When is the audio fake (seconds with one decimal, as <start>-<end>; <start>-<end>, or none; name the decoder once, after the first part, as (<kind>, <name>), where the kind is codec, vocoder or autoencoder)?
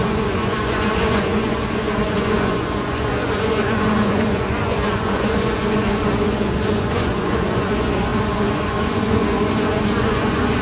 0.0-10.6 (vocoder, Vocos)